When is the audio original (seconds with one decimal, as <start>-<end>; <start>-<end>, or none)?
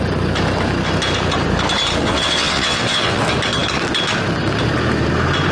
0.0-2.0; 3.2-5.5